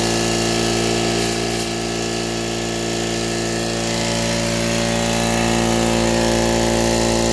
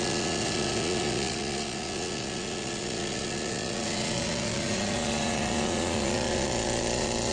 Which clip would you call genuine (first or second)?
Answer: first